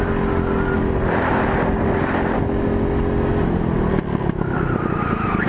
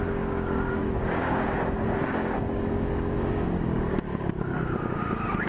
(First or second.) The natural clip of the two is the first